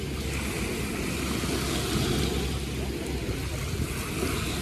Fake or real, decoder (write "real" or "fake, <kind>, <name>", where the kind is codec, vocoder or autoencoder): real